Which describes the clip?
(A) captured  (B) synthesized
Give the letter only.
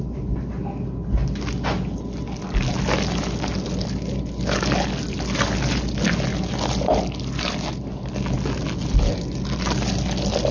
A